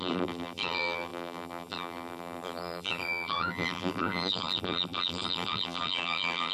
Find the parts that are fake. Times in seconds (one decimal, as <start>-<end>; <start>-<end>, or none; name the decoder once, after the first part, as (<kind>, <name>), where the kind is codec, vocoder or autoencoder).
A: 0.0-6.5 (vocoder, BigVGAN v2)